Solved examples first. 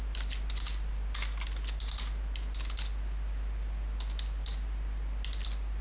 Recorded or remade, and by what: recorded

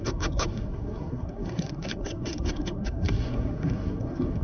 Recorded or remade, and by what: remade, codec, SNAC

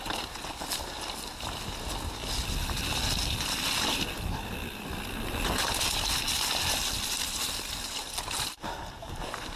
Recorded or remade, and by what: recorded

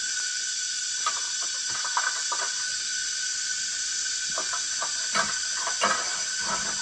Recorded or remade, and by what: recorded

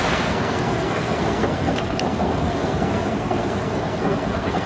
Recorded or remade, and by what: remade, codec, SNAC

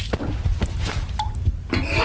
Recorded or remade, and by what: recorded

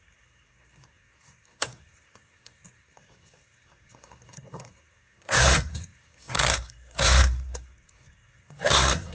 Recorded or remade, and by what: remade, codec, SNAC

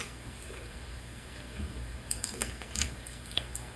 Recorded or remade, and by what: remade, codec, SNAC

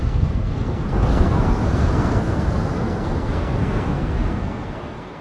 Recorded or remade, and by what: remade, codec, SNAC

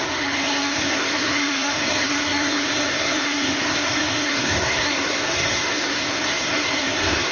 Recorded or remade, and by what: remade, codec, SNAC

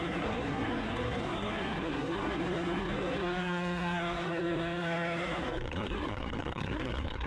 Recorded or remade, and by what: remade, codec, SNAC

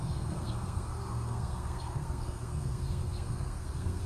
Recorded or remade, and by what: remade, codec, SNAC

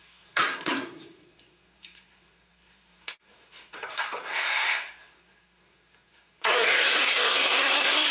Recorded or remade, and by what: remade, codec, SNAC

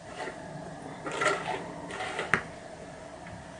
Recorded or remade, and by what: recorded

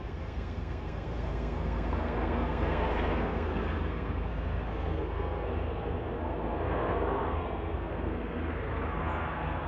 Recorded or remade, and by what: remade, codec, SNAC